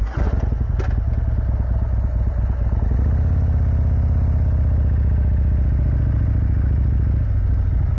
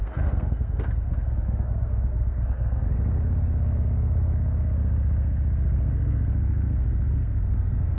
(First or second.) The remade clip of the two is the second